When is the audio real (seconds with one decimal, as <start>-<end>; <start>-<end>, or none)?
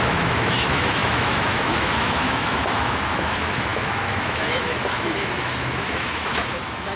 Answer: none